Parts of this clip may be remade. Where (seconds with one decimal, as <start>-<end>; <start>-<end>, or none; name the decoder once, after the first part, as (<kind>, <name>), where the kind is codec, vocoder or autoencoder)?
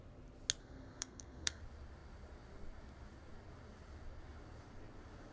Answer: 0.6-1.6 (codec, SNAC)